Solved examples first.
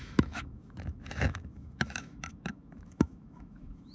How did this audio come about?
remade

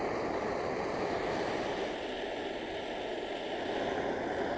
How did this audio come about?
recorded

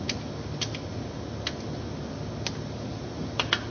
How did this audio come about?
recorded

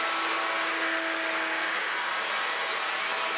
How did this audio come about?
recorded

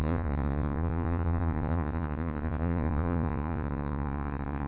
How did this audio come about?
remade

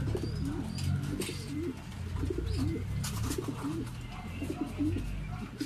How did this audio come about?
recorded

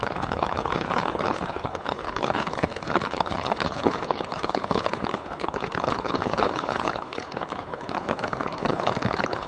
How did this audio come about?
remade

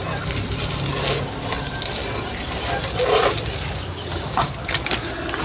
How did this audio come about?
recorded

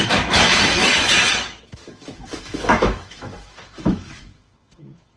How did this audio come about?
remade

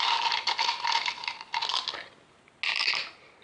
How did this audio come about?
recorded